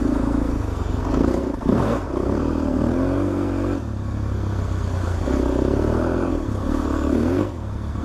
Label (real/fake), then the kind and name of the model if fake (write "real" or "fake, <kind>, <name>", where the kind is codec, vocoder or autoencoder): fake, codec, SNAC